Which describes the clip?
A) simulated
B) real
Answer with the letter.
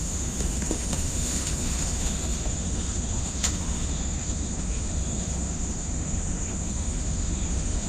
A